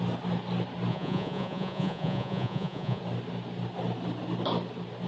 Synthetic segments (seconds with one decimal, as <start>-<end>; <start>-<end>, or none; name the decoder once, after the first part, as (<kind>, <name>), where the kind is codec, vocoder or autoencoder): 0.9-3.0 (vocoder, Vocos)